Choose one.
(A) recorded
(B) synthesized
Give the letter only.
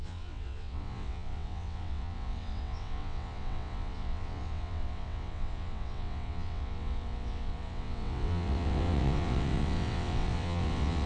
B